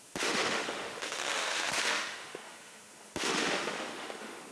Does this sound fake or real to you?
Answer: fake